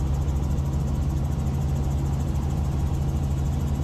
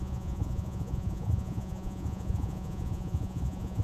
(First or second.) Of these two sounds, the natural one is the first